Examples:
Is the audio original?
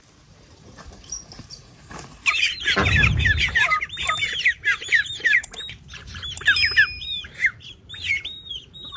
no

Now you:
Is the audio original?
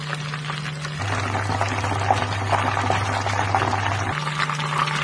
yes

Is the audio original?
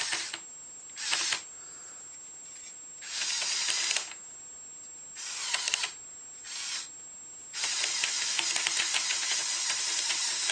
yes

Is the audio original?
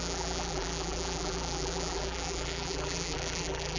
no